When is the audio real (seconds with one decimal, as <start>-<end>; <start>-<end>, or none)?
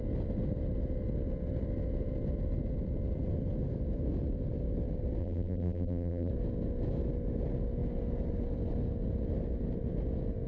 0.0-5.2; 6.3-10.5